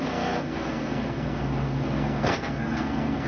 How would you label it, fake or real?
fake